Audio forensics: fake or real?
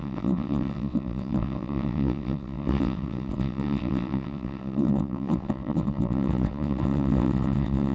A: fake